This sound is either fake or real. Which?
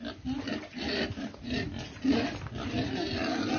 real